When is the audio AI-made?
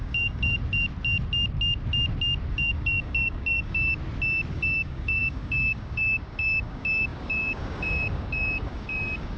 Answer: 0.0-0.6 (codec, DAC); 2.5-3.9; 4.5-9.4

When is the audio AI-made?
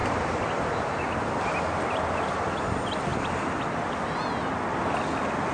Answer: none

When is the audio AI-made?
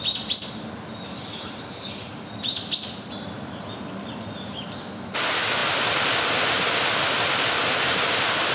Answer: none